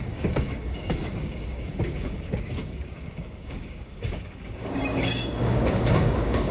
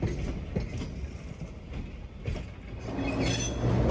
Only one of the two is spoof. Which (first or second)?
first